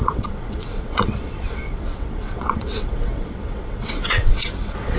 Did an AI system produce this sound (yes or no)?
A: yes